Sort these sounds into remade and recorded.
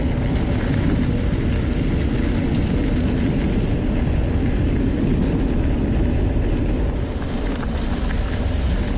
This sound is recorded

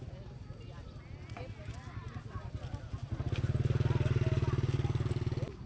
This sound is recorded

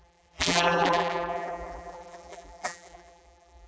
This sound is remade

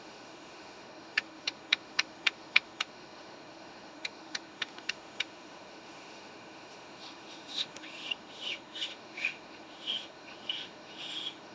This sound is remade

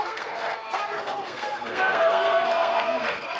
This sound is remade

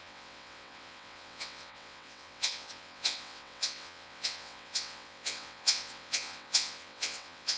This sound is remade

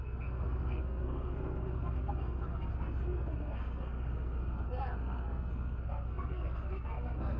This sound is remade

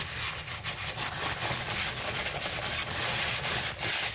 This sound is recorded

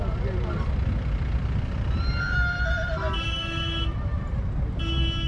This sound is recorded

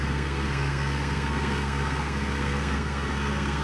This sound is remade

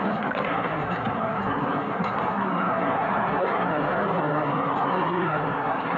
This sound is remade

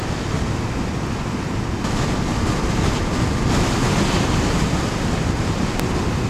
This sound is recorded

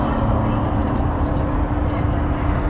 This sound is recorded